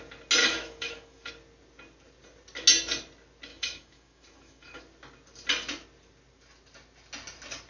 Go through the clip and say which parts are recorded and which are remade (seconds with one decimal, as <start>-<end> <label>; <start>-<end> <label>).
0.0-0.4 recorded; 0.4-1.3 remade; 1.3-3.5 recorded; 3.5-4.8 remade; 4.8-7.7 recorded